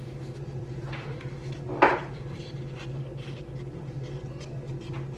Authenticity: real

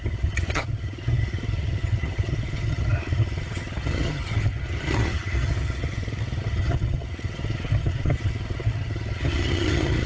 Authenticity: fake